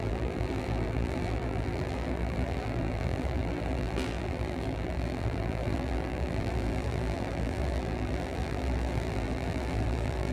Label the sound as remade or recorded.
remade